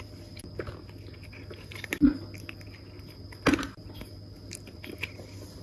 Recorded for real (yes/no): yes